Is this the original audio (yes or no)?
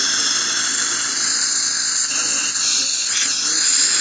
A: yes